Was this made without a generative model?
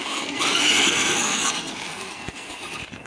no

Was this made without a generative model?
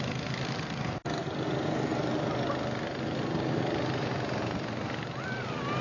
yes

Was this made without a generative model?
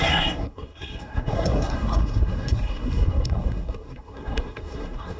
no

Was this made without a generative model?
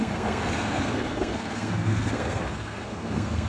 no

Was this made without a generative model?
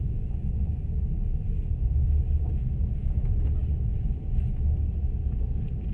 yes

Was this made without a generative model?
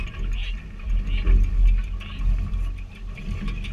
yes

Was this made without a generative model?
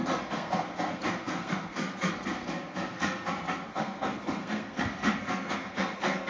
no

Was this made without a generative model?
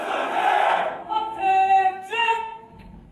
no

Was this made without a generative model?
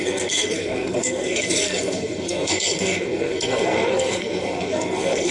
no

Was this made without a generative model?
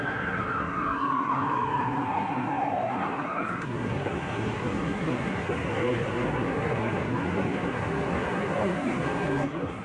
no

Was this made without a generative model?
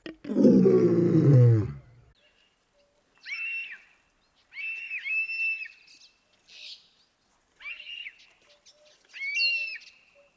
yes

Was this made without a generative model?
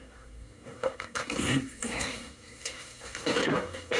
no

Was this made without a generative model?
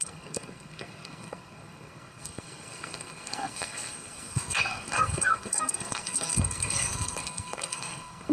no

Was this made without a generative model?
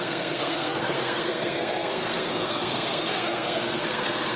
no